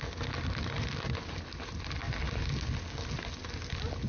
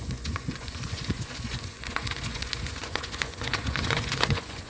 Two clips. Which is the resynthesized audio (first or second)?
second